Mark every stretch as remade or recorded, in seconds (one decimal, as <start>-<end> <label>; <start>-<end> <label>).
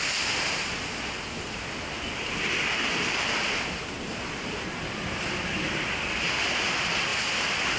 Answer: 0.0-7.8 recorded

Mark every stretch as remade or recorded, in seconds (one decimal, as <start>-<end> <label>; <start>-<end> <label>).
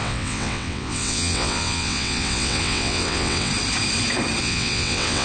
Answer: 0.0-3.5 remade; 3.5-4.4 recorded; 4.4-5.2 remade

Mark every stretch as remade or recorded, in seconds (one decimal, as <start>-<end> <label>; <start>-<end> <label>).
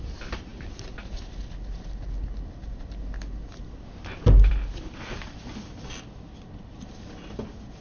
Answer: 0.0-7.8 recorded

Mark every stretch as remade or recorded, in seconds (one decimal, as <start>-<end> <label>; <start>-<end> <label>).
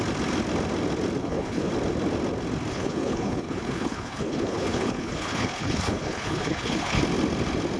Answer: 0.0-1.2 recorded; 1.2-1.7 remade; 1.7-2.7 recorded; 2.7-7.0 remade; 7.0-7.8 recorded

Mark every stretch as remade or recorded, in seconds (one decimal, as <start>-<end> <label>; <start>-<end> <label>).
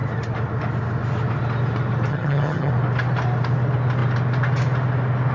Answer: 0.0-2.1 recorded; 2.1-2.7 remade; 2.7-5.3 recorded